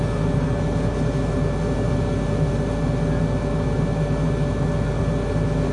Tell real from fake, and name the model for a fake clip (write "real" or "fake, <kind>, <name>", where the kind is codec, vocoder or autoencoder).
real